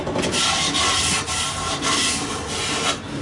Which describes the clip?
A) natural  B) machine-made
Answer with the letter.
A